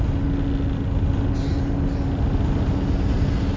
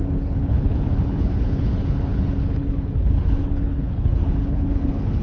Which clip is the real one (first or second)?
first